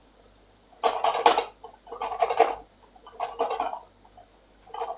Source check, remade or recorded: recorded